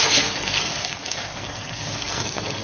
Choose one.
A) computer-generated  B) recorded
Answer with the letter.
A